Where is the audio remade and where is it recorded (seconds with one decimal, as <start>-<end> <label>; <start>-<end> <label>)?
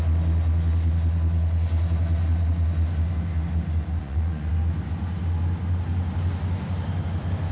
0.0-4.0 recorded; 4.0-4.5 remade; 4.5-7.5 recorded